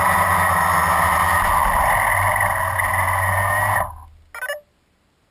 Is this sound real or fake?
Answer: real